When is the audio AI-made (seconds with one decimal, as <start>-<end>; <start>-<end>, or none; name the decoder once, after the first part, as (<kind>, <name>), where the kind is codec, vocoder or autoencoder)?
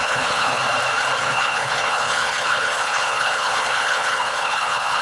0.0-0.6 (codec, HILCodec); 1.2-5.0